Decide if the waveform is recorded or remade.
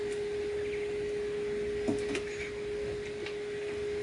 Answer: recorded